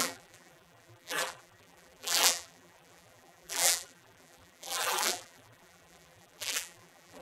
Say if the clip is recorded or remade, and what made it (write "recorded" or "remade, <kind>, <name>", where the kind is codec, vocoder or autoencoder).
remade, vocoder, BigVGAN v2